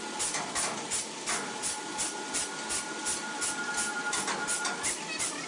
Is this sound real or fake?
real